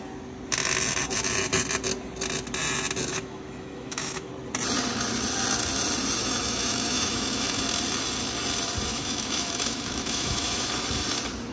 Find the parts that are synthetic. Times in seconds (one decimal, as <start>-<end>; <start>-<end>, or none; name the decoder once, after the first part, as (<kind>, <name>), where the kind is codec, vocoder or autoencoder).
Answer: 3.1-4.3 (autoencoder, DAC-VAE); 6.2-7.6; 8.9-10.7